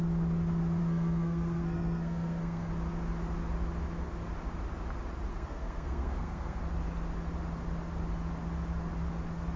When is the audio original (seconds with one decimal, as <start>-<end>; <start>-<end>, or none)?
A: 0.0-0.8; 2.7-5.3; 6.6-9.6